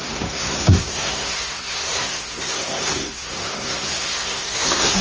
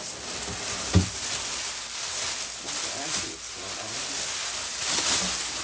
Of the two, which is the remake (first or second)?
first